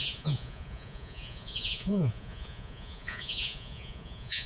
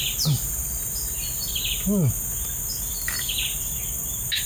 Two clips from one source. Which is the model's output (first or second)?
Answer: first